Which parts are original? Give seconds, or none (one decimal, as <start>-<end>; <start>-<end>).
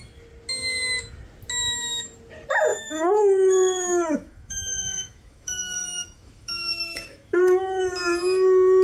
0.0-2.7; 7.8-8.8